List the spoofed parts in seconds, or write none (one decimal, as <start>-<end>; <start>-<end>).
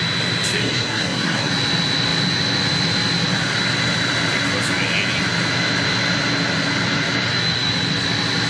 0.6-1.5